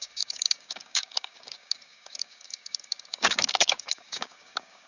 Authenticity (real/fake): fake